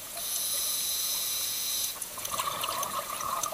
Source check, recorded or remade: remade